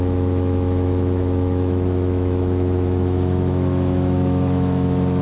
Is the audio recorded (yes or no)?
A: no